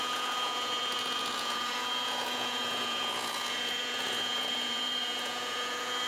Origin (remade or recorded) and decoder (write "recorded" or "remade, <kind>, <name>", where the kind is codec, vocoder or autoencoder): remade, vocoder, Vocos